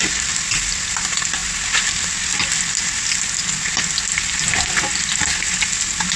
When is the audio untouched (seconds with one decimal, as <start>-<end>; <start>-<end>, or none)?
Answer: 0.0-6.2